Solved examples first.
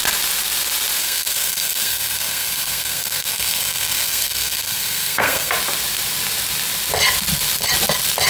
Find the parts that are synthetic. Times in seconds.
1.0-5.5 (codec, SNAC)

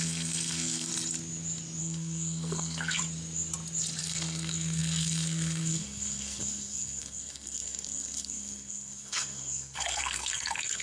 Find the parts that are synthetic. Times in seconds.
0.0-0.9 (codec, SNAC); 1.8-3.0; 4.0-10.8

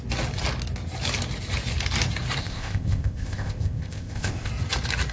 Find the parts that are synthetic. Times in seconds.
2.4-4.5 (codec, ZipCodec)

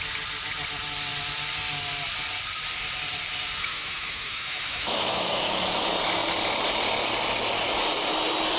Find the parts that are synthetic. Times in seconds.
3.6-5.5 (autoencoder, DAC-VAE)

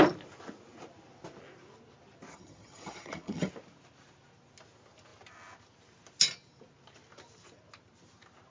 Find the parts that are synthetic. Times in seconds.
2.3-3.5 (vocoder, HiFi-GAN)